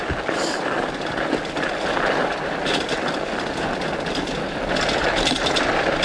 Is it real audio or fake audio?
real